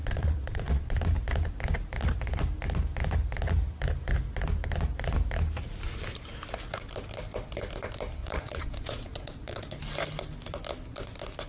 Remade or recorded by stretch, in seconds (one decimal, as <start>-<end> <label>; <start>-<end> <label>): 0.0-1.0 remade; 1.0-8.2 recorded; 8.2-9.6 remade; 9.6-11.5 recorded